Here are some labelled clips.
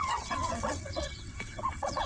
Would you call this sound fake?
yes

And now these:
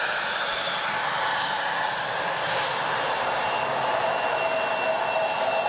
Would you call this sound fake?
no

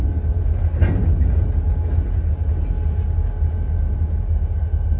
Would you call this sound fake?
no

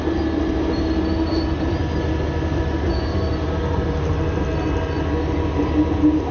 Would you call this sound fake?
no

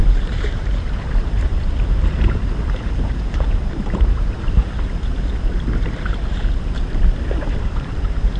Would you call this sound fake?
yes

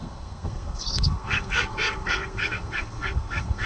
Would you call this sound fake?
yes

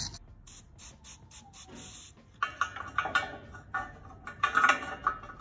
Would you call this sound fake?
no